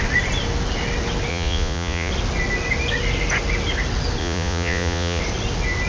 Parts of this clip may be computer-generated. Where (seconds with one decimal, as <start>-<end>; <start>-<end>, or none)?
1.3-2.1; 4.2-5.2